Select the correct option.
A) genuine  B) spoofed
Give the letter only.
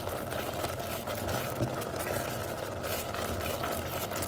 A